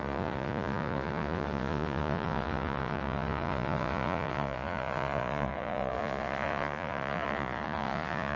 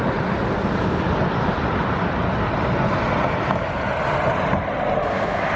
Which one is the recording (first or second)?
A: second